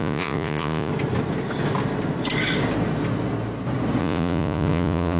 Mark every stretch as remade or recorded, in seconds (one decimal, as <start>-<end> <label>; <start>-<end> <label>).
0.0-0.9 remade; 0.9-4.0 recorded; 4.0-5.2 remade